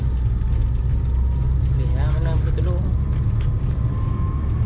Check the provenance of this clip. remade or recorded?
recorded